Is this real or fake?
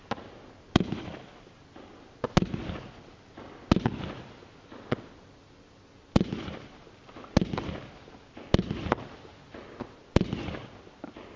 real